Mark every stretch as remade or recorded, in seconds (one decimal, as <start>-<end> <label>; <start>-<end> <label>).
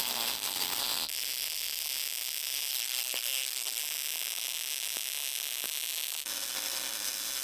0.0-0.8 remade; 0.8-2.7 recorded; 2.7-3.8 remade; 3.8-7.4 recorded